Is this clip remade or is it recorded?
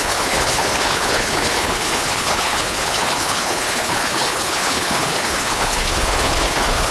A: remade